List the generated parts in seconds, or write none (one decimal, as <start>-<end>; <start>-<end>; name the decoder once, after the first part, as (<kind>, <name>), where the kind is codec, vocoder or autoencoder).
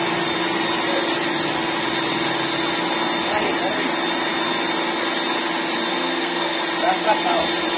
6.0-6.6 (codec, SNAC)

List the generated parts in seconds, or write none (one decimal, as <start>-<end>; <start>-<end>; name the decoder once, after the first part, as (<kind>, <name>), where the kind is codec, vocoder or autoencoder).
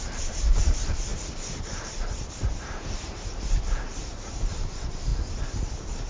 0.0-5.1 (vocoder, BigVGAN v2); 5.6-6.1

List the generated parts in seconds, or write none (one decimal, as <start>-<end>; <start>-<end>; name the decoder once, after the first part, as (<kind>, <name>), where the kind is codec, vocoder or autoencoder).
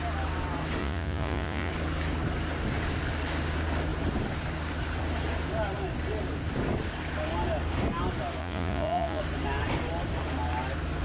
0.8-1.7 (vocoder, Vocos); 8.4-9.2